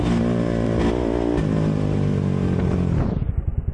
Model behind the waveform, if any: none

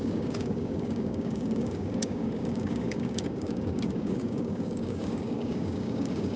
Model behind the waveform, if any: codec, DAC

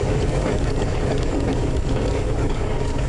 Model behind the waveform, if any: codec, DAC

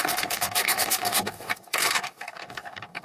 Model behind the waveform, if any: codec, DAC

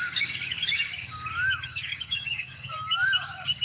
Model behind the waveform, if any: codec, DAC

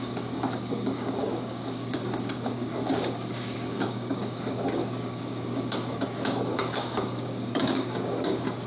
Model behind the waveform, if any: codec, DAC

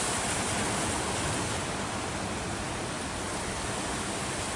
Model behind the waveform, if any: none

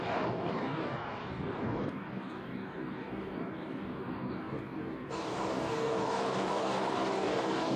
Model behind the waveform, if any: codec, DAC